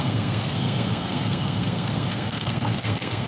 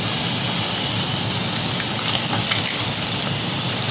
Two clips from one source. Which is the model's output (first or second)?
first